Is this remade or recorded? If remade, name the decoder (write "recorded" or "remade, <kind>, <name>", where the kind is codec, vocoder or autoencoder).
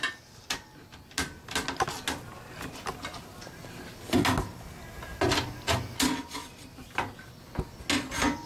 recorded